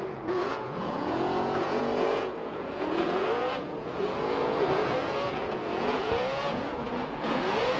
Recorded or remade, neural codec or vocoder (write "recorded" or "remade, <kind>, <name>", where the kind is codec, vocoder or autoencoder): remade, vocoder, Vocos